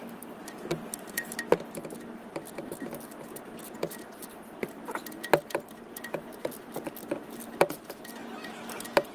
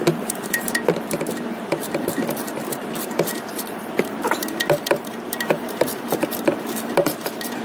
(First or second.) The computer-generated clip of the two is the second